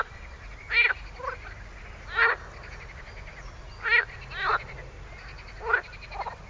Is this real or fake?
real